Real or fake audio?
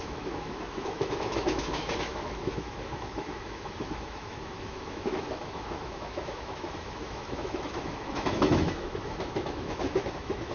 fake